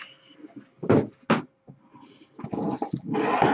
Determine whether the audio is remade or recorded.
recorded